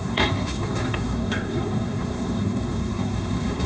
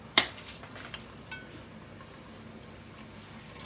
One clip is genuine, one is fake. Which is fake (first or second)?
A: first